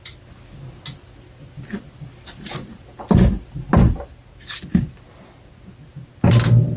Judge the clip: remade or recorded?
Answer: recorded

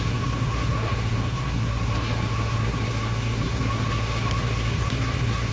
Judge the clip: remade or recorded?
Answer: remade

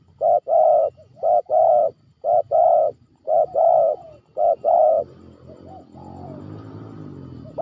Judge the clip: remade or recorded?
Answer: recorded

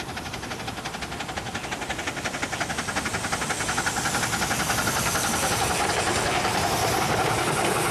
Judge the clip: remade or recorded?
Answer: recorded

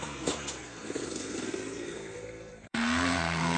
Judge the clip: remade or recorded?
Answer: remade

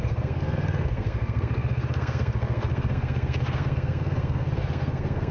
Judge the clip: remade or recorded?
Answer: remade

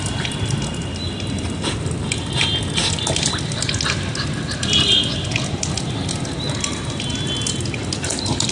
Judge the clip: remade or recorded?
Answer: recorded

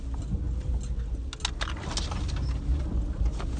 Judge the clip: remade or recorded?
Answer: recorded